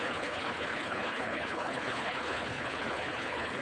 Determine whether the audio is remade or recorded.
remade